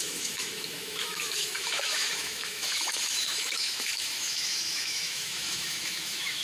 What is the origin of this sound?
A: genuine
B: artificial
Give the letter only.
B